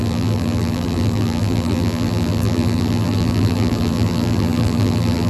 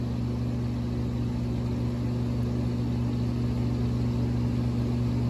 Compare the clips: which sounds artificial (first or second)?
first